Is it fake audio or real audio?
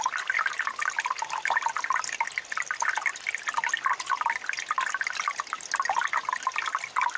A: real